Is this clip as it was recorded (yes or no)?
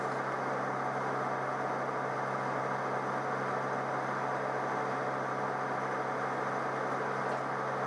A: yes